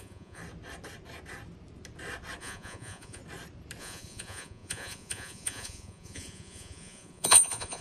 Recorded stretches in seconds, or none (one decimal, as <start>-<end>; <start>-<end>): 0.4-2.4; 3.2-3.8